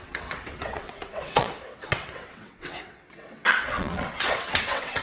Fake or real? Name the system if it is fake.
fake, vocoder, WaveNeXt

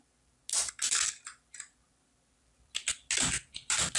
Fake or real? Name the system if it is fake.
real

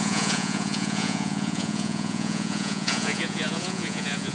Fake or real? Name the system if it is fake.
fake, vocoder, Vocos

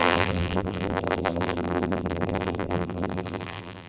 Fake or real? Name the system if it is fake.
fake, vocoder, BigVGAN v2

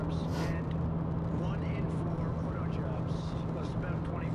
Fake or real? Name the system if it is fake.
real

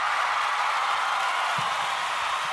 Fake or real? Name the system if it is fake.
real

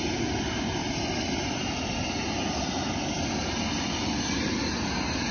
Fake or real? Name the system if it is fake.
real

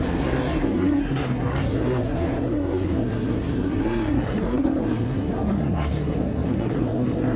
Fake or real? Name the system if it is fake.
fake, codec, SNAC